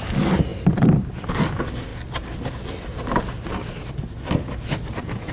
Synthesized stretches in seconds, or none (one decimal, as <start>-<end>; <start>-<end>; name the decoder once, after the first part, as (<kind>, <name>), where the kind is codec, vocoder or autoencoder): 0.5-1.3 (vocoder, BigVGAN v2)